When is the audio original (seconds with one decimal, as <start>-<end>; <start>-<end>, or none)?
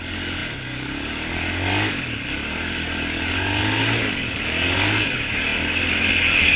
none